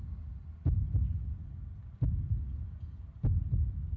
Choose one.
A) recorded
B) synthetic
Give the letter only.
A